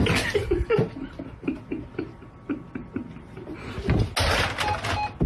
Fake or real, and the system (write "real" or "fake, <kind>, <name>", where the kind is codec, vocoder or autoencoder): real